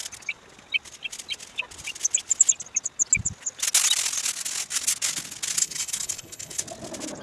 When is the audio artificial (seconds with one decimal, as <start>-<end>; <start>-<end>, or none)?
5.6-6.6